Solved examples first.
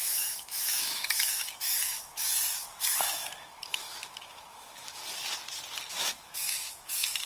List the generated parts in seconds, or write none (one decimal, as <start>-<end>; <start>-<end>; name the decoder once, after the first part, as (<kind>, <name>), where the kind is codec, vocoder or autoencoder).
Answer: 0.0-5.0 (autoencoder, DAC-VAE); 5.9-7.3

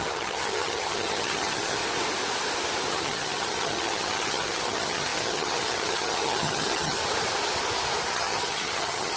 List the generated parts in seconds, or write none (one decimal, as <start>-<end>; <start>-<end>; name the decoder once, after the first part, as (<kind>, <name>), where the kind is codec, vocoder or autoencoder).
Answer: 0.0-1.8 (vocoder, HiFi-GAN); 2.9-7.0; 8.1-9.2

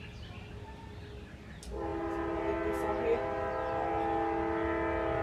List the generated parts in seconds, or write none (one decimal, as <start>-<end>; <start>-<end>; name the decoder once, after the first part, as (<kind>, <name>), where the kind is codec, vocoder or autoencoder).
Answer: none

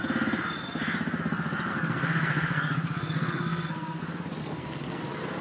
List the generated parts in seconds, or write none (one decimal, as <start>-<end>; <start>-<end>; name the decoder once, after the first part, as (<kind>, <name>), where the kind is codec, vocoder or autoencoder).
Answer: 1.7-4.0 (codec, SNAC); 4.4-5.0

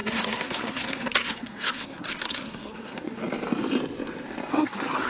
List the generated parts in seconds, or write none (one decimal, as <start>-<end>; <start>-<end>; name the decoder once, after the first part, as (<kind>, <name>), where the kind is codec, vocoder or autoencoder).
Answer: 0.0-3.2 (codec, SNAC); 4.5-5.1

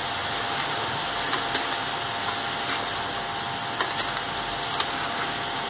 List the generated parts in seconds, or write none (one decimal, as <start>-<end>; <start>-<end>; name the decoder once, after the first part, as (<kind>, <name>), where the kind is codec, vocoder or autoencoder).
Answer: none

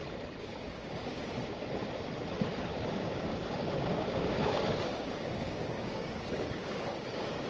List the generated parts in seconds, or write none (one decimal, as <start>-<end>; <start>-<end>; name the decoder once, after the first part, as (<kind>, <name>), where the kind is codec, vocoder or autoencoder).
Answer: 0.4-1.6 (codec, DAC); 2.7-7.5

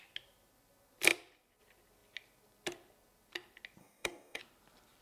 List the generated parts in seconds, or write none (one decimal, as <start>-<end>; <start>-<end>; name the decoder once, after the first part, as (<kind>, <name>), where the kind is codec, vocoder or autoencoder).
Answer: 3.8-4.4 (codec, DAC)